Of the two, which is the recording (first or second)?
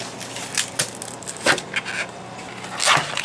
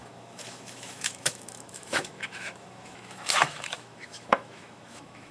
first